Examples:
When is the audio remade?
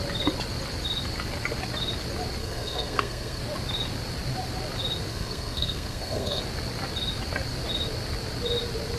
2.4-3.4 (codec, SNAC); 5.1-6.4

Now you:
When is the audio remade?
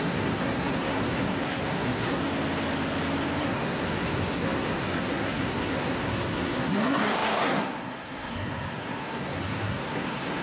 0.0-2.2 (codec, SNAC); 3.4-10.4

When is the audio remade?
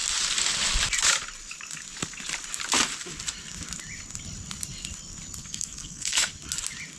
5.4-6.3 (codec, SNAC)